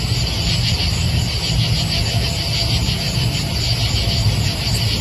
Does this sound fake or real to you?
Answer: real